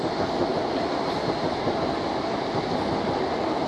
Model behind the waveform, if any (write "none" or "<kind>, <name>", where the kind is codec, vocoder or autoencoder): none